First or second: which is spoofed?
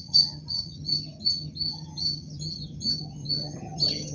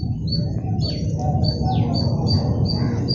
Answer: first